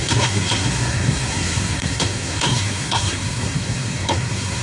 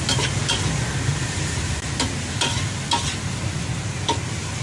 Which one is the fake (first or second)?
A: first